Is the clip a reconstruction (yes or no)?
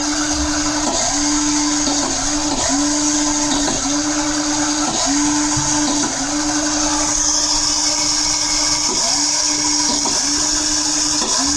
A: no